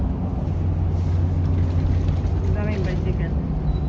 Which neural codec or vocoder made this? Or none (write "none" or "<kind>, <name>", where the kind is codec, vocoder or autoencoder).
none